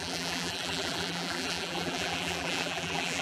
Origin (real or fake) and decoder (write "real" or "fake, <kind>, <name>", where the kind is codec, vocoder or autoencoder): fake, vocoder, BigVGAN v2